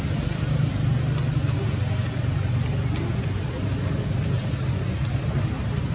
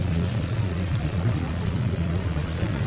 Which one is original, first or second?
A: first